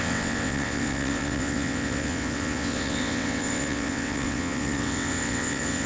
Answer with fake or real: fake